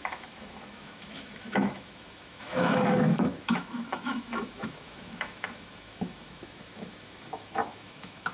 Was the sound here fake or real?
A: fake